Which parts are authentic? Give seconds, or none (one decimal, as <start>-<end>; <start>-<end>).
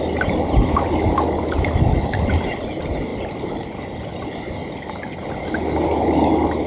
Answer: 0.0-6.7